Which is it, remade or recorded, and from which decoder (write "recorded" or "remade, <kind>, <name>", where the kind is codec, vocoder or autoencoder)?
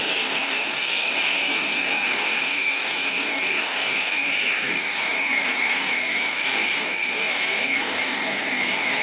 remade, codec, DAC